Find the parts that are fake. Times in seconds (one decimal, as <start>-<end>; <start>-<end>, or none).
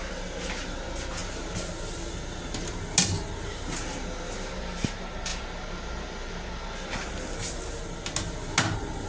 none